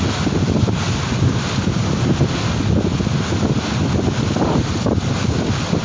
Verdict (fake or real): fake